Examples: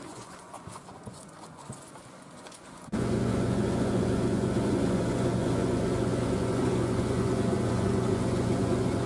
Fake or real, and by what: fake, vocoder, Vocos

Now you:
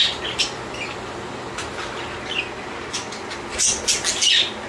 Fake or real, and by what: real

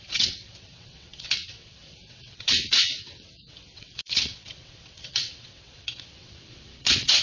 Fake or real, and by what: fake, vocoder, WaveNeXt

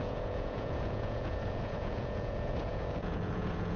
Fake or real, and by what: fake, vocoder, Vocos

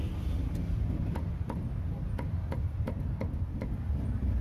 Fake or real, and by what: real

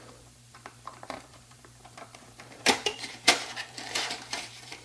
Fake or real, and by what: fake, vocoder, BigVGAN v2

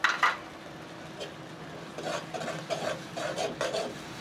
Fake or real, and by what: real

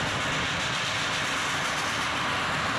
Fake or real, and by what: real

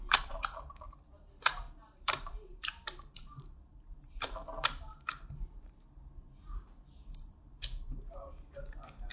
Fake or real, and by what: fake, vocoder, BigVGAN v2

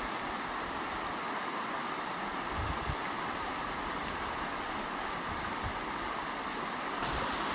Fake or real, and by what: fake, vocoder, BigVGAN v2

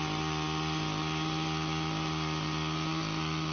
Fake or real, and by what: real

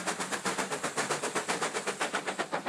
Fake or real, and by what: real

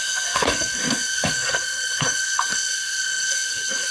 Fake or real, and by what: fake, codec, SNAC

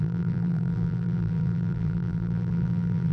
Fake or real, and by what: fake, vocoder, BigVGAN v2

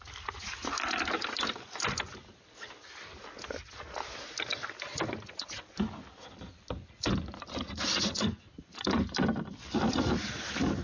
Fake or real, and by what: real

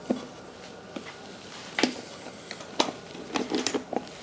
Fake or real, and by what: real